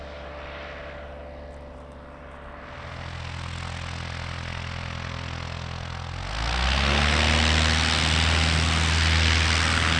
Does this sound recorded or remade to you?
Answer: recorded